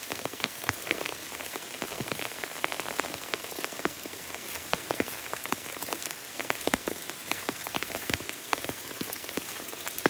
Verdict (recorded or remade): remade